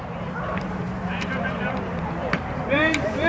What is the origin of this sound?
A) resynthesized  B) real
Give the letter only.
A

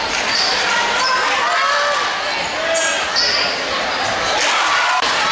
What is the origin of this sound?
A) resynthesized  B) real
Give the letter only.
B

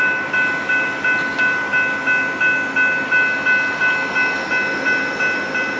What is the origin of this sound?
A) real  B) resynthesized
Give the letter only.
A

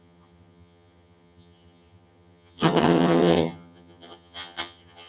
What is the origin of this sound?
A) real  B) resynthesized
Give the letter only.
B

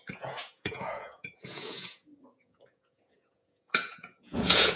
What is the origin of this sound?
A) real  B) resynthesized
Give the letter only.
B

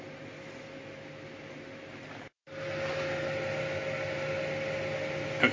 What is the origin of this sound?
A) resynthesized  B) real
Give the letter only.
B